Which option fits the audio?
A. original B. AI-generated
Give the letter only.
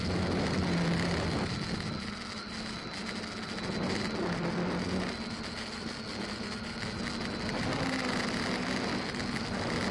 A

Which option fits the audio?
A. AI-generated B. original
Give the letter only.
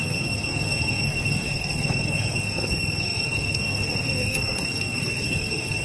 A